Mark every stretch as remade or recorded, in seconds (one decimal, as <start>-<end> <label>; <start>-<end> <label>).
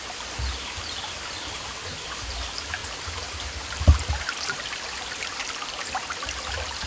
0.0-6.9 recorded